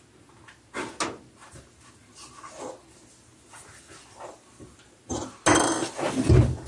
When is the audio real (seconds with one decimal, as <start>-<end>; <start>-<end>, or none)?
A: 0.0-6.7